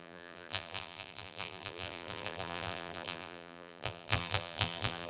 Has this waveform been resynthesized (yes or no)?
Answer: yes